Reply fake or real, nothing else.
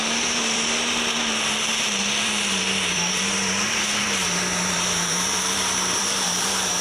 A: fake